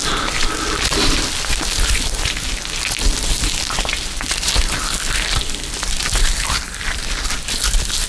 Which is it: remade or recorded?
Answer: recorded